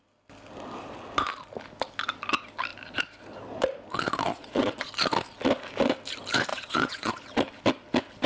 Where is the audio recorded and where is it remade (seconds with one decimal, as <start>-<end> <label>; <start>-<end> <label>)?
0.0-4.3 recorded; 4.3-4.9 remade; 4.9-6.5 recorded; 6.5-7.1 remade; 7.1-8.3 recorded